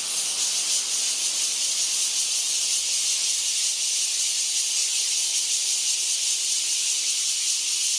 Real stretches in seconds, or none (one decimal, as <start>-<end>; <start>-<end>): 0.0-1.5; 3.3-6.0; 7.2-8.0